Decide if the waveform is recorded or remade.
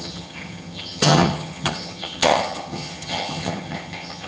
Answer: remade